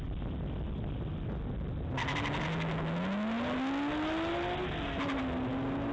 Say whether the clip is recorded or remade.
recorded